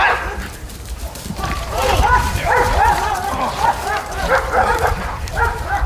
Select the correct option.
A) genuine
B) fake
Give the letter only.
B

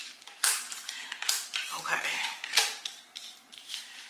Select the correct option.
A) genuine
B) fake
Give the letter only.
B